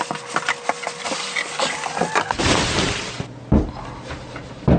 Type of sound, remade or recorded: recorded